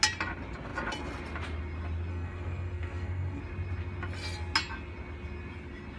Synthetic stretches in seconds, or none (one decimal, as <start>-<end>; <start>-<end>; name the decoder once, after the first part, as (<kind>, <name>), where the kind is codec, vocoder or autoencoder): 2.1-3.4 (codec, SNAC)